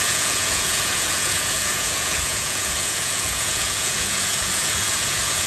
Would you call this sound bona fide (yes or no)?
no